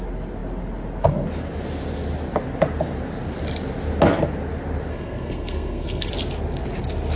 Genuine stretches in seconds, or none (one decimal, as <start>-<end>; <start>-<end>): 0.0-4.9; 6.1-7.2